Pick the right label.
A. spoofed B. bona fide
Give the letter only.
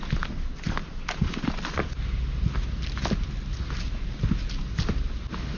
B